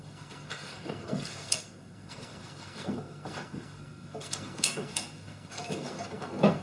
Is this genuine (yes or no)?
no